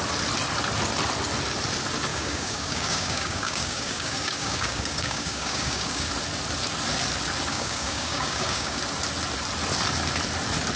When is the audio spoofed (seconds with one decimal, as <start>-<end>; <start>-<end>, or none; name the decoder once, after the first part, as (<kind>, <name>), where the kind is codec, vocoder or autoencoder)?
2.1-6.1 (codec, DAC); 7.5-8.8